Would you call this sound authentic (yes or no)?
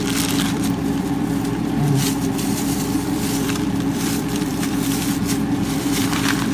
no